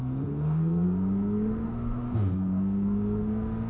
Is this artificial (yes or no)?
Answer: yes